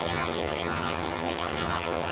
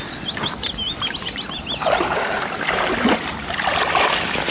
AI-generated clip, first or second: first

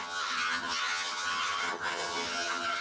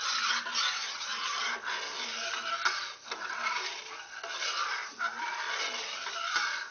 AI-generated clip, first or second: first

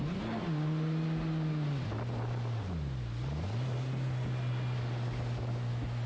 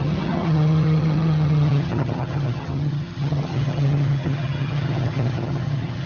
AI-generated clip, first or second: second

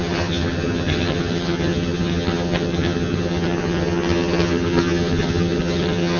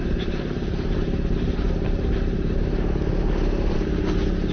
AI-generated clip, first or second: first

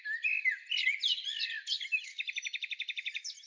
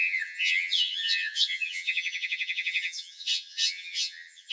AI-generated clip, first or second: second